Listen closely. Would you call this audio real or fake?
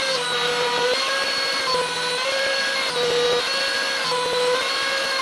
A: real